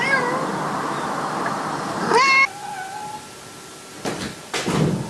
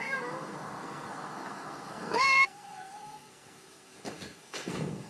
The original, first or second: first